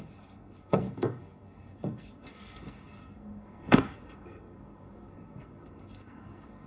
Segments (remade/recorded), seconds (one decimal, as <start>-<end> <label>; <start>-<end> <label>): 0.0-6.7 remade